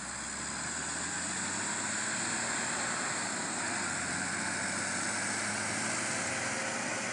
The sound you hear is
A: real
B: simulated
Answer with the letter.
A